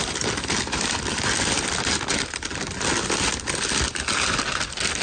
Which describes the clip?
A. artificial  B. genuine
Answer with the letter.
B